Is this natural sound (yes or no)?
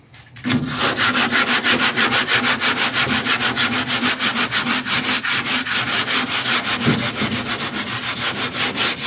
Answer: yes